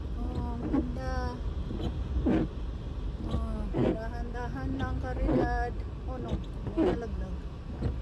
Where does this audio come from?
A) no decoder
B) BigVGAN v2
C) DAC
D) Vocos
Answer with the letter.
A